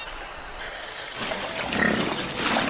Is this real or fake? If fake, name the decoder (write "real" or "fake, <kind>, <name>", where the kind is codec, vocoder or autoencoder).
real